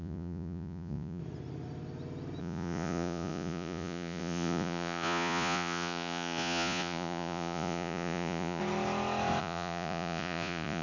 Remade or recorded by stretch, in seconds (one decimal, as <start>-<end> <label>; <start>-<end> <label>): 0.0-1.2 remade; 1.2-2.4 recorded; 2.4-8.6 remade; 8.6-9.4 recorded; 9.4-10.8 remade